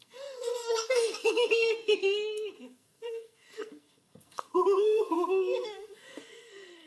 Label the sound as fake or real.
fake